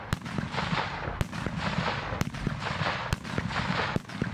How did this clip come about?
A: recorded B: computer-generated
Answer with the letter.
A